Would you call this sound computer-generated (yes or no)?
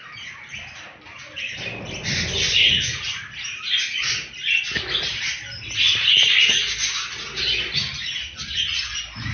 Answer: no